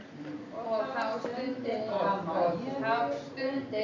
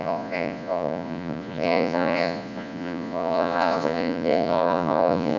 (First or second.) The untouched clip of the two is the first